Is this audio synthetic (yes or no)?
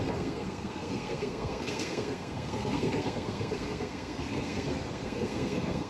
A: yes